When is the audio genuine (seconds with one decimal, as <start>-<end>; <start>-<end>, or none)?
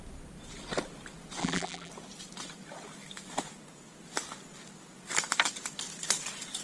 0.0-1.4; 1.9-6.6